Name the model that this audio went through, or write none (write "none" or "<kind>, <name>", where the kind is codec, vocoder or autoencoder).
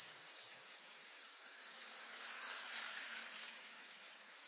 codec, DAC